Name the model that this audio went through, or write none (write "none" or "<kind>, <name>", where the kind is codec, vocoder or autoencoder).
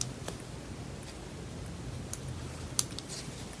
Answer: none